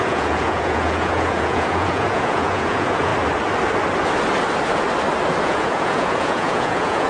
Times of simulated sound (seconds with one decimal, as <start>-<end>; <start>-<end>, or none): 0.0-3.1; 5.4-7.1